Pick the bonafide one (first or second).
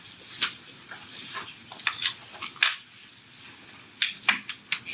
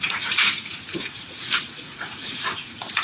first